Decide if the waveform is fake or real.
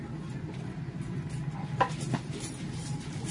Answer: real